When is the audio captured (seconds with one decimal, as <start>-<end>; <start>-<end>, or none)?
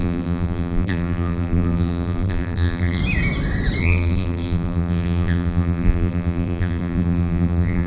3.0-3.8